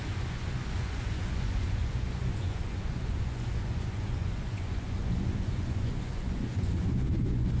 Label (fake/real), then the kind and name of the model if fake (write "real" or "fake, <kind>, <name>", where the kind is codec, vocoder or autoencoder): fake, vocoder, Vocos